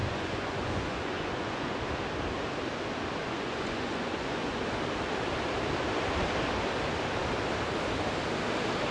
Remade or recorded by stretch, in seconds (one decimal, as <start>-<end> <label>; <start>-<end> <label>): 0.0-1.7 remade; 1.7-3.2 recorded; 3.2-4.6 remade; 4.6-8.9 recorded